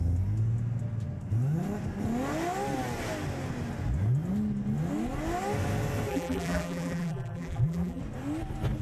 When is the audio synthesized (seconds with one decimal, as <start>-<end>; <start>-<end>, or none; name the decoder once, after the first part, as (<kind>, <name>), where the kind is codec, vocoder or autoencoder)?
6.1-8.0 (vocoder, BigVGAN v2)